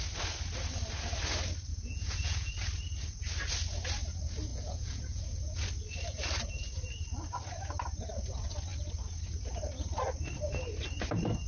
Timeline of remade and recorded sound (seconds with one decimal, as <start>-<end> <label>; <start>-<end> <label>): 0.0-1.7 recorded; 1.7-2.5 remade; 2.5-4.5 recorded; 4.5-5.2 remade; 5.2-11.5 recorded